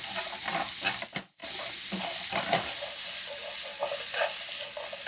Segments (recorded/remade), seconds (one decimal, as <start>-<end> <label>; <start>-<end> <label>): 0.0-3.7 recorded; 3.7-5.1 remade

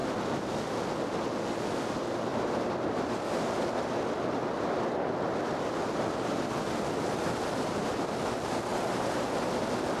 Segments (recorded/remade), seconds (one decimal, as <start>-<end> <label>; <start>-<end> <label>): 0.0-2.3 recorded; 2.3-3.2 remade; 3.2-8.7 recorded; 8.7-9.3 remade; 9.3-10.0 recorded

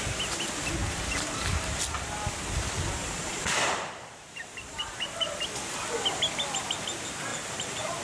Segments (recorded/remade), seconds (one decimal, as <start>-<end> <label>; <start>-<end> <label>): 0.0-0.8 recorded; 0.8-2.3 remade; 2.3-3.0 recorded; 3.0-5.4 remade; 5.4-7.3 recorded; 7.3-8.0 remade